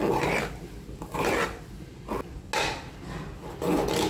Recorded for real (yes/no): yes